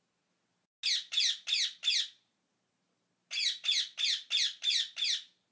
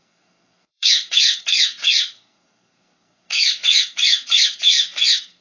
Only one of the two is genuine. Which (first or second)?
first